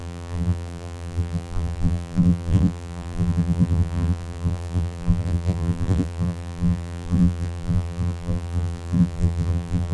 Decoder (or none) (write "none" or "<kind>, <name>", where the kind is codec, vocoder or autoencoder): vocoder, BigVGAN v2